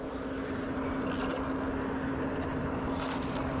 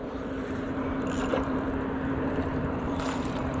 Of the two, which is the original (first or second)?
first